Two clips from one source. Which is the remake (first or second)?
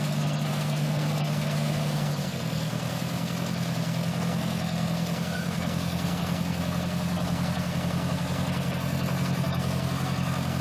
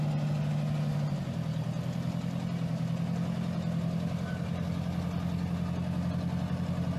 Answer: first